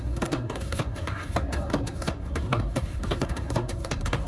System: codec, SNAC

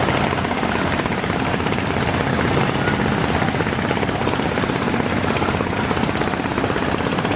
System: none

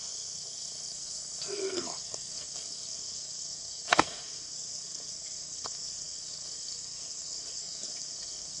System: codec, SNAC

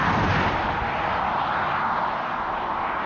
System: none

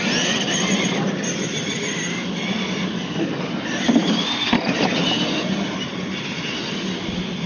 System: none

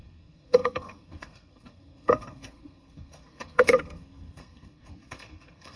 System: codec, SNAC